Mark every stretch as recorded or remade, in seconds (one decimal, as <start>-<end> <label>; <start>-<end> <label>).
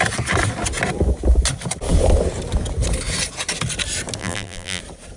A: 0.0-4.2 recorded; 4.2-4.8 remade; 4.8-5.2 recorded